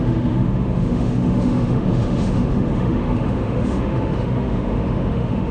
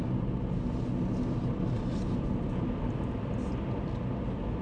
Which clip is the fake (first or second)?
first